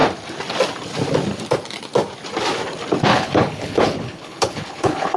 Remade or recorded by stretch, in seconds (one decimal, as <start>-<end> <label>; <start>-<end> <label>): 0.0-3.1 recorded; 3.1-5.2 remade